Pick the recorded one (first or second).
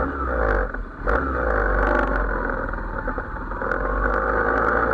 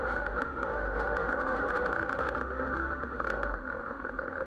first